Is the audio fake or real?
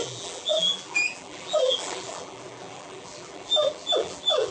fake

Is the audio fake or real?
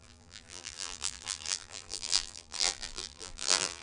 fake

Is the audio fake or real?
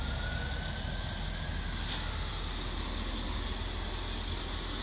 real